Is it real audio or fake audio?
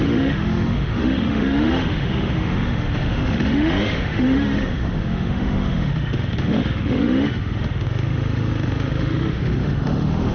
fake